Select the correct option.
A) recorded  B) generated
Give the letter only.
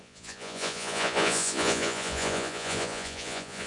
B